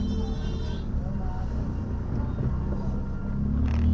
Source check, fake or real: real